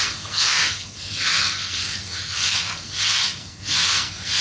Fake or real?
fake